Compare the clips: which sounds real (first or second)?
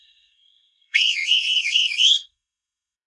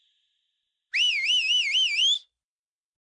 second